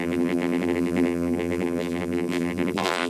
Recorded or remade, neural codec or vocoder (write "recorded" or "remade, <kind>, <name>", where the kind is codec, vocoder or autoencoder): remade, vocoder, BigVGAN v2